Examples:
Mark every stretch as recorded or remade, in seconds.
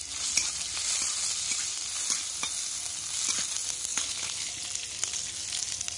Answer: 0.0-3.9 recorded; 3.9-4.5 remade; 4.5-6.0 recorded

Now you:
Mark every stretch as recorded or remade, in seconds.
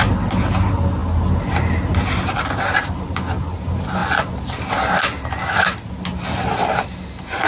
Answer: 0.0-7.5 recorded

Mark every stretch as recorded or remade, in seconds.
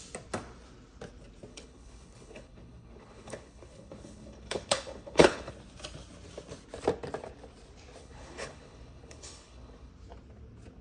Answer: 0.0-1.5 recorded; 1.5-5.5 remade; 5.5-8.0 recorded; 8.0-9.9 remade; 9.9-10.8 recorded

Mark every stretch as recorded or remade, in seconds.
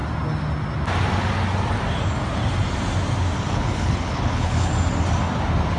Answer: 0.0-3.5 recorded; 3.5-4.7 remade; 4.7-5.8 recorded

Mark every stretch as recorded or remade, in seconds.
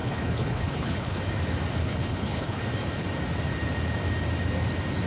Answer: 0.0-1.2 remade; 1.2-1.8 recorded; 1.8-2.6 remade; 2.6-5.1 recorded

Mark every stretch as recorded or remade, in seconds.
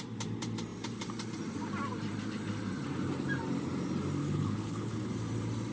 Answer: 0.0-4.2 recorded; 4.2-5.1 remade; 5.1-5.7 recorded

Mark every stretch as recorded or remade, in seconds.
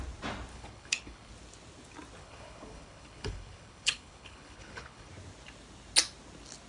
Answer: 0.0-0.5 recorded; 0.5-1.3 remade; 1.3-2.2 recorded; 2.2-5.1 remade; 5.1-6.7 recorded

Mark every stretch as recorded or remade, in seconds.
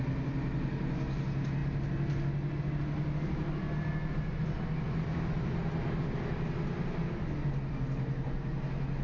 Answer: 0.0-9.0 recorded